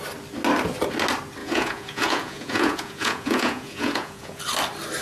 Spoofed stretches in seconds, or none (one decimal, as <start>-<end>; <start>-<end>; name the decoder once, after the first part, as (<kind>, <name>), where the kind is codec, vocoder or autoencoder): 1.4-4.4 (vocoder, Vocos)